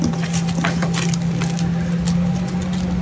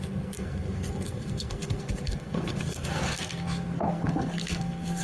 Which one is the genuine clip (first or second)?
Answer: first